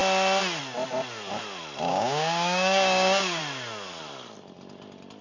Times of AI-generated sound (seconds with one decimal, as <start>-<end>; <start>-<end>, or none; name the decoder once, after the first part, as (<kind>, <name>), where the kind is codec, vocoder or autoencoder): 1.9-3.4 (codec, DAC)